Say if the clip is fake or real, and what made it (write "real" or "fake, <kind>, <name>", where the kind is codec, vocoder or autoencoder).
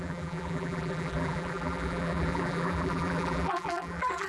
fake, vocoder, BigVGAN v2